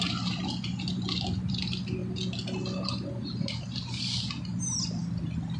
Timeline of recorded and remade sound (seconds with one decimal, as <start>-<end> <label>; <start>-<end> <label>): 0.0-5.6 recorded